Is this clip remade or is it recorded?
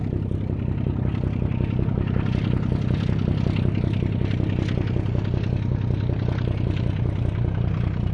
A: recorded